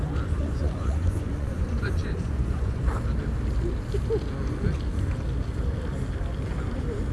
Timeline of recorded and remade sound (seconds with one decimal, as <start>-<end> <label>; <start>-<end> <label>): 0.0-0.4 recorded; 0.4-2.9 remade; 2.9-7.1 recorded